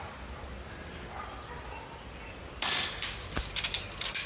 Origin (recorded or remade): remade